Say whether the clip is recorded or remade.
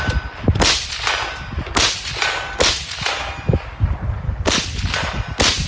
recorded